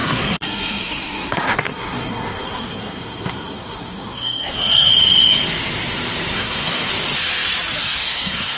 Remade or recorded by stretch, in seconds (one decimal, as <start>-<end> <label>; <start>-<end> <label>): 0.0-4.9 remade; 4.9-6.3 recorded; 6.3-6.9 remade; 6.9-7.8 recorded; 7.8-8.6 remade